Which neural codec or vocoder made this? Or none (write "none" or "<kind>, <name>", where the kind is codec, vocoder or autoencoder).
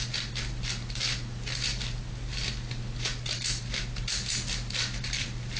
none